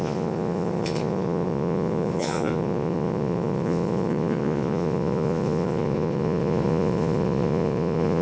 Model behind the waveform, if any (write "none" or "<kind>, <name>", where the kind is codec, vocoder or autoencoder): vocoder, Vocos